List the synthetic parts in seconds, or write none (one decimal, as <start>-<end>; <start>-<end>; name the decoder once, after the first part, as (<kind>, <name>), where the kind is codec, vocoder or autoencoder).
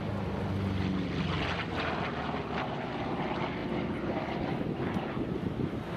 none